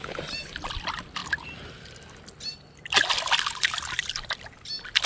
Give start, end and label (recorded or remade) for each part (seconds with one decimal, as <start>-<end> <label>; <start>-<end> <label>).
0.0-5.1 recorded